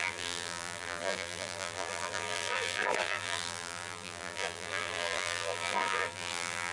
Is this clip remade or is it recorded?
remade